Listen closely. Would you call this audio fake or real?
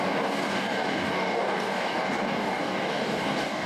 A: fake